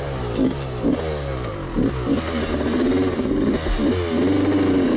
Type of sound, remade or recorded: recorded